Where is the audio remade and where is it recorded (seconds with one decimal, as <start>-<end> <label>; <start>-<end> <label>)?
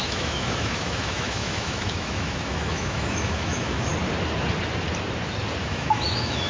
0.0-3.9 remade; 3.9-5.6 recorded; 5.6-6.5 remade